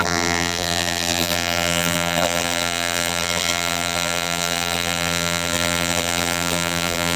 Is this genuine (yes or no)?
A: no